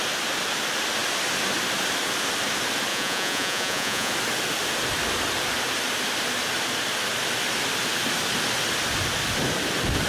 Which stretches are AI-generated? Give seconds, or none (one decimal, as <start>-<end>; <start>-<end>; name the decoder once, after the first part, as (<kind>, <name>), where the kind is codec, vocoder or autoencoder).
2.9-4.1 (vocoder, Vocos)